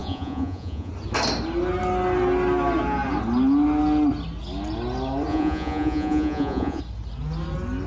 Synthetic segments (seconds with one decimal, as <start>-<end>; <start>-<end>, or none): 0.0-0.9; 5.3-6.8